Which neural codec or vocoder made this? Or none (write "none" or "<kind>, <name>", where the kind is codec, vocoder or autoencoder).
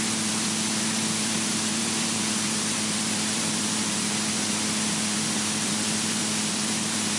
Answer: vocoder, BigVGAN v2